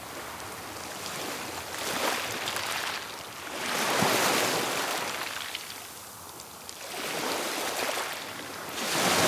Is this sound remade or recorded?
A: recorded